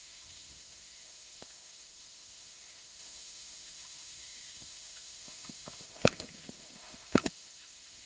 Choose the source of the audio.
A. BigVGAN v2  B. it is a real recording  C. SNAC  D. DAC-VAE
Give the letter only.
D